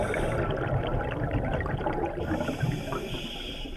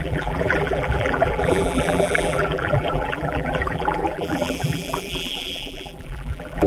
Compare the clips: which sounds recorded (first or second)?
first